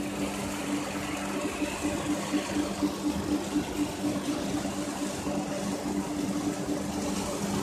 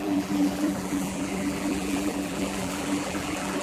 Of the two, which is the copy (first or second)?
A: second